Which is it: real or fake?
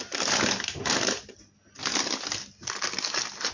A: real